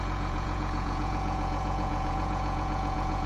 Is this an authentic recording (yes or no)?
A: no